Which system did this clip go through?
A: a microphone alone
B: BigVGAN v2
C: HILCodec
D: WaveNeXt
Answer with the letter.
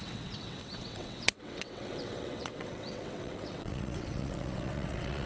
D